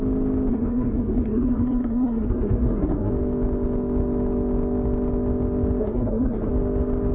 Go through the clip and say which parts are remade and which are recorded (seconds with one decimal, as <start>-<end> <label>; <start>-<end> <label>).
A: 0.0-0.5 recorded; 0.5-3.1 remade; 3.1-5.8 recorded; 5.8-6.5 remade; 6.5-7.1 recorded